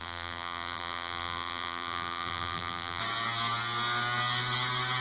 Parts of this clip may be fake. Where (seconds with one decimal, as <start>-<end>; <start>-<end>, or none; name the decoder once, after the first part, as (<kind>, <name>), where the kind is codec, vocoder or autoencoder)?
0.0-3.0 (vocoder, BigVGAN v2)